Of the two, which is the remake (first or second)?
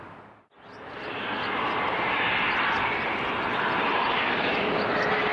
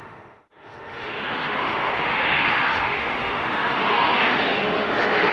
second